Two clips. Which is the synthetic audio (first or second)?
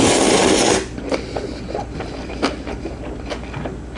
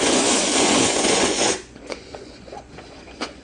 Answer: second